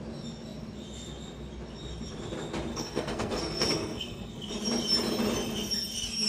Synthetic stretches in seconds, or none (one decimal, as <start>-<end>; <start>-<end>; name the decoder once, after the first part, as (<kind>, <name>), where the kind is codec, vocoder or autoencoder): 2.7-4.5 (codec, SNAC)